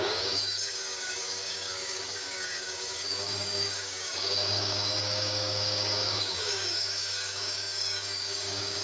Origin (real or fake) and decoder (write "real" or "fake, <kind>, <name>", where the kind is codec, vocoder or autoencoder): fake, codec, DAC